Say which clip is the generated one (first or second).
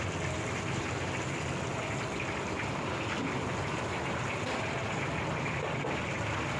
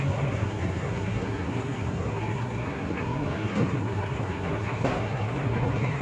second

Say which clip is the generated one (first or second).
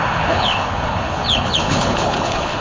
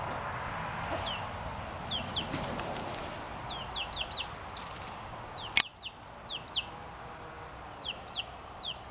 first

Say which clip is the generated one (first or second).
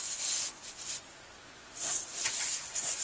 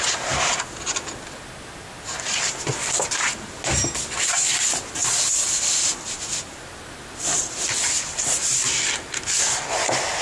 first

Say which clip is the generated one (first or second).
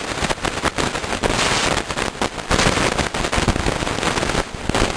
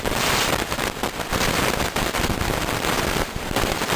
second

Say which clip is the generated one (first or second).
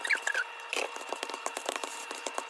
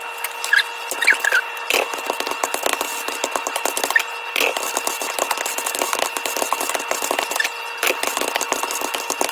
first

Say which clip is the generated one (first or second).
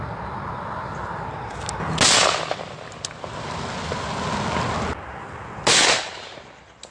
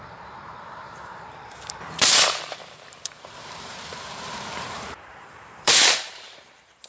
second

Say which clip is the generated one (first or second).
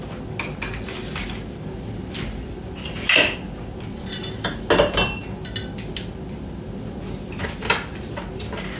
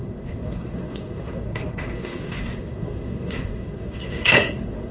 second